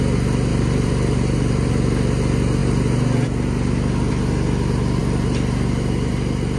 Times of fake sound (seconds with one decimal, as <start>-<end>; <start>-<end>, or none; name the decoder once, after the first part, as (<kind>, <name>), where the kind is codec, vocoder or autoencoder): 0.5-1.7 (vocoder, BigVGAN v2); 5.0-6.1